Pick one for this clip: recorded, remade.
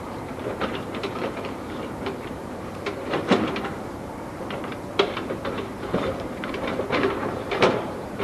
remade